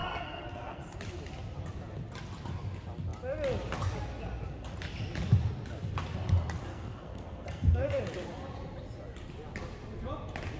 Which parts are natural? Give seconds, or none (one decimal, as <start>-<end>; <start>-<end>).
0.8-6.7; 8.0-10.6